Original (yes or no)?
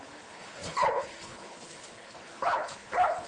no